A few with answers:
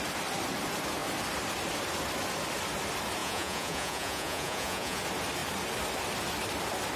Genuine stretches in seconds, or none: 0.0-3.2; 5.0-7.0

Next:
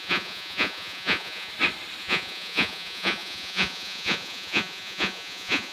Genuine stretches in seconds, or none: 1.5-2.0

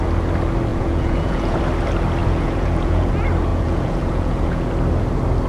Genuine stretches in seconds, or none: 0.0-0.7; 1.6-2.2; 3.1-3.5; 4.7-5.5

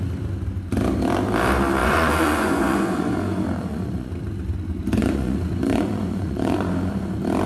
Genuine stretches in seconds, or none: 0.0-1.8; 4.1-5.0; 6.9-7.5